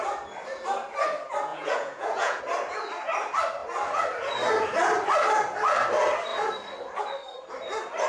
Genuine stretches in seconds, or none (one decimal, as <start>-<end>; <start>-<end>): 0.0-1.5; 2.4-8.1